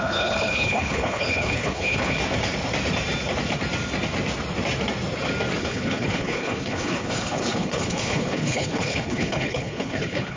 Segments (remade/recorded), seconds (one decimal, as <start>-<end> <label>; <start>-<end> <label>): 0.0-2.2 remade; 2.2-5.6 recorded; 5.6-10.4 remade